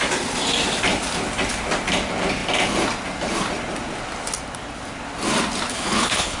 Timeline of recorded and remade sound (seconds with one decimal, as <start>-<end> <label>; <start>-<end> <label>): 0.0-5.7 recorded; 5.7-6.4 remade